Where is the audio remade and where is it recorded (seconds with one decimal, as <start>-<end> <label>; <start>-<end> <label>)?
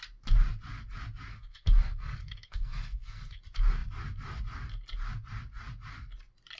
0.0-1.3 recorded; 1.3-3.4 remade; 3.4-6.6 recorded